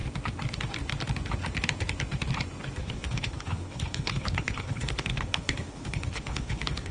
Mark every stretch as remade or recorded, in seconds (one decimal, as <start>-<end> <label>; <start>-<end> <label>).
0.0-2.8 recorded; 2.8-6.9 remade